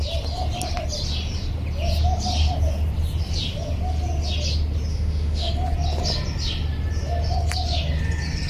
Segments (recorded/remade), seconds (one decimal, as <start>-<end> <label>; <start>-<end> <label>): 0.0-4.9 recorded; 4.9-5.5 remade; 5.5-8.5 recorded